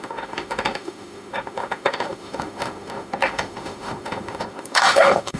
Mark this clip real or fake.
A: fake